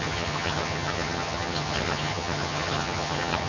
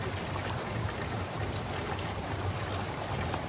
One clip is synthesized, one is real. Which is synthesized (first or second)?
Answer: first